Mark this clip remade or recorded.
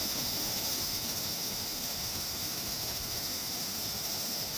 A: remade